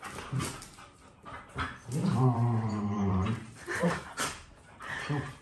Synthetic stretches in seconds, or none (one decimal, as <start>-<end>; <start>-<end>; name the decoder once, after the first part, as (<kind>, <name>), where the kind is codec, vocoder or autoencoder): 2.0-5.4 (vocoder, BigVGAN v2)